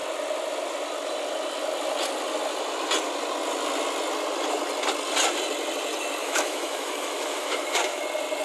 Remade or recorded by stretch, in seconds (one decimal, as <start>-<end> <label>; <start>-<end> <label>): 0.0-6.2 recorded; 6.2-8.0 remade; 8.0-8.4 recorded